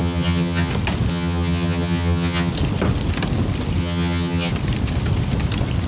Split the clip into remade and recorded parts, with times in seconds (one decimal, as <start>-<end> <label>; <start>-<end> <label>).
0.0-0.7 remade; 0.7-1.1 recorded; 1.1-2.5 remade; 2.5-3.8 recorded; 3.8-4.5 remade; 4.5-5.9 recorded